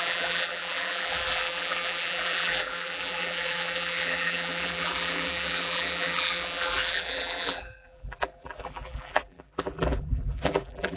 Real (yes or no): no